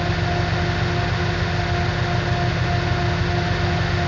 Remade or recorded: recorded